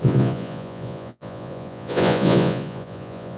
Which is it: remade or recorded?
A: remade